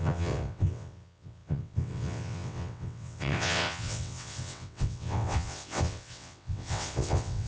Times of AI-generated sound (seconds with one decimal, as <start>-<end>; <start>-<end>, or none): 0.0-7.5